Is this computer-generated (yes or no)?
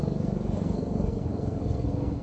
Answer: yes